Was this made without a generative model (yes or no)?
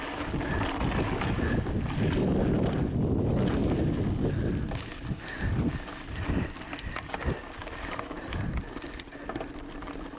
yes